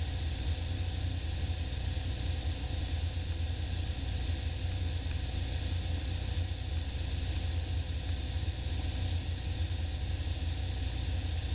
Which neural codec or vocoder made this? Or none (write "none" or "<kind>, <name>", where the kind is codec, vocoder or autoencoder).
none